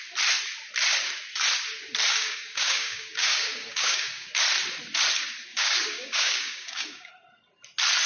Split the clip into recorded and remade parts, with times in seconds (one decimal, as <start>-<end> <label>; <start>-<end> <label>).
0.0-2.1 recorded; 2.1-4.3 remade; 4.3-5.5 recorded; 5.5-7.1 remade; 7.1-8.1 recorded